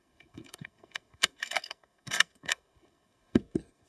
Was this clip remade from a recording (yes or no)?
yes